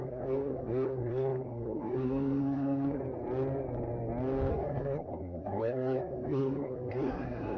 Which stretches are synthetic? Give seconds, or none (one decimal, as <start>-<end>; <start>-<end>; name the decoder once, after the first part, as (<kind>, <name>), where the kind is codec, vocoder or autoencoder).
0.0-3.0 (codec, SNAC); 4.5-7.6

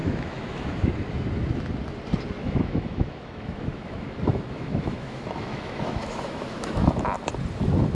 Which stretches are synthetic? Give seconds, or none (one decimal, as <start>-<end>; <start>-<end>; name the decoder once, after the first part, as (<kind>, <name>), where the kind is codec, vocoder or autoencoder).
0.0-0.9 (autoencoder, DAC-VAE); 2.4-6.9

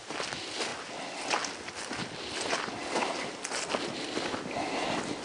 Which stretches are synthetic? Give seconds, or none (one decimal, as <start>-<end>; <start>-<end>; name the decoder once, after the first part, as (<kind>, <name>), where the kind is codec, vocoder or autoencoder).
none

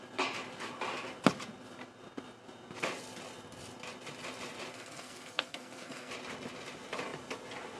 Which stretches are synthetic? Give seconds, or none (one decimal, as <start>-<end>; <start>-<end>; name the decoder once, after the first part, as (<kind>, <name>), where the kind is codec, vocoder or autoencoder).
4.7-6.1 (codec, SNAC)

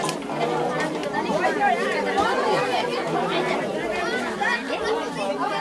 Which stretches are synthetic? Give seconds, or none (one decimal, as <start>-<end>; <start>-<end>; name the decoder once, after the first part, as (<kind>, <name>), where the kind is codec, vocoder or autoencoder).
1.0-4.2 (vocoder, BigVGAN v2)

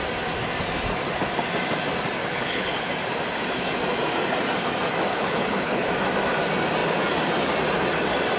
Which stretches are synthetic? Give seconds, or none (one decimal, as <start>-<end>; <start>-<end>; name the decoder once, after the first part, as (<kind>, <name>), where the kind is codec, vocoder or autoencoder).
2.2-2.9 (codec, HILCodec); 5.1-5.9